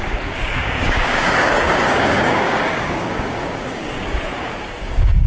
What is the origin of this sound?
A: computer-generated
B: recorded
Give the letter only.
A